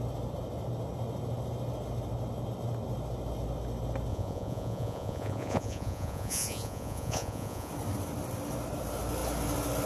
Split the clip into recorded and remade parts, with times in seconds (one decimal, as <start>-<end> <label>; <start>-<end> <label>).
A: 0.0-4.1 recorded; 4.1-7.7 remade; 7.7-9.9 recorded